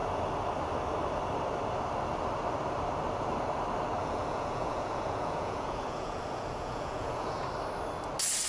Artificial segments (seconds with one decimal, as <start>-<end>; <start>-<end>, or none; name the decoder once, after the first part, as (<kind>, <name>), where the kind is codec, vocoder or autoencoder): 4.0-7.4 (vocoder, Vocos)

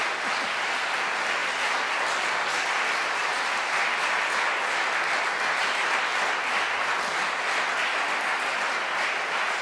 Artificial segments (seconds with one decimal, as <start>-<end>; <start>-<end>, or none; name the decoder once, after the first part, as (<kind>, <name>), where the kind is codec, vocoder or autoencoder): none

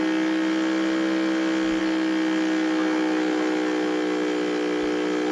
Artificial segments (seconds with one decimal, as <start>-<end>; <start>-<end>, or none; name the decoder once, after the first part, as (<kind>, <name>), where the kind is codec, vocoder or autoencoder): none

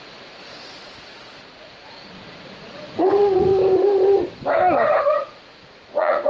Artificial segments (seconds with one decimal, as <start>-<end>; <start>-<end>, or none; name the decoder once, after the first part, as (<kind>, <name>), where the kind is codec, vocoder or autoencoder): 0.0-3.5 (vocoder, Vocos); 5.0-6.3

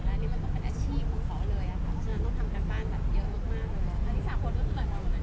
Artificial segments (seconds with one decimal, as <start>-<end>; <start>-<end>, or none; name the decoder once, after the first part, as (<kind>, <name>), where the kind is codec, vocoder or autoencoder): none

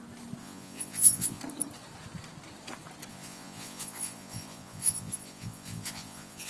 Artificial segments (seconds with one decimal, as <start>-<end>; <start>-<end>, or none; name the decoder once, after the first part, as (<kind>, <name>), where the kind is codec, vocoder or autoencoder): 0.4-1.4 (vocoder, Vocos); 3.1-6.5

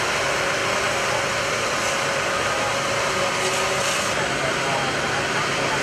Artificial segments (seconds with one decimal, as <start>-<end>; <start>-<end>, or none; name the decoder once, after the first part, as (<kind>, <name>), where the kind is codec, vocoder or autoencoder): none